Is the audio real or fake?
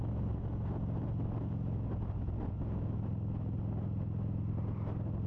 real